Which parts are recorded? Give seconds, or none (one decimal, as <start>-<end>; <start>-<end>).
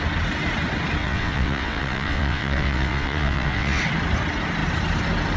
0.0-1.0; 3.8-5.4